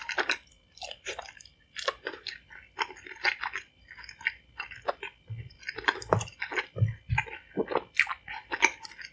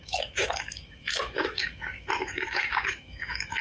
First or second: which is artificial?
second